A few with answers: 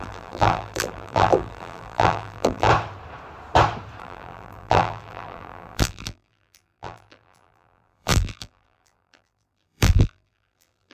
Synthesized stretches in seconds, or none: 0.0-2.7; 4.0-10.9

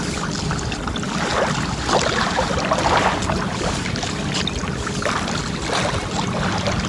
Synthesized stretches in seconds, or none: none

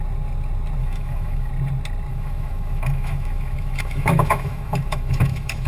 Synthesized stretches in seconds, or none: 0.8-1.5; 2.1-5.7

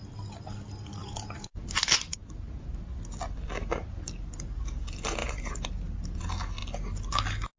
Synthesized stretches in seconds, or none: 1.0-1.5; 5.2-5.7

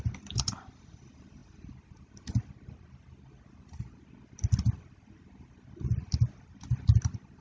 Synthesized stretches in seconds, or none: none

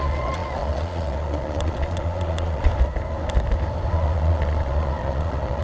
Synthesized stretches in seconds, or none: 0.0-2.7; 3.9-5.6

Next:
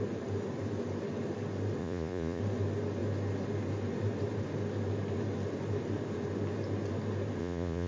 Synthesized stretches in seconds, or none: 1.8-2.4; 7.4-7.9

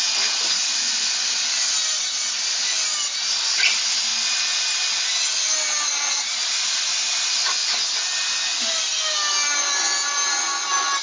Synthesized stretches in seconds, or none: none